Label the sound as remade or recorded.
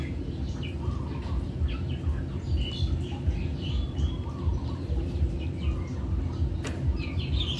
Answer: recorded